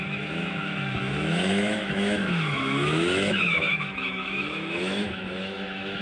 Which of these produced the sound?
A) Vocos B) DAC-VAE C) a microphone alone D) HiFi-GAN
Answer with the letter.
B